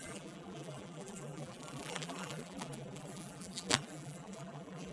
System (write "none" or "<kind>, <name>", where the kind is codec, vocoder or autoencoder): vocoder, BigVGAN v2